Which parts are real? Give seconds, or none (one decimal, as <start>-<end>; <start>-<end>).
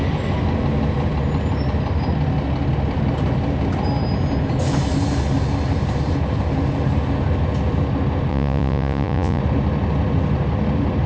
0.0-8.3; 9.4-11.1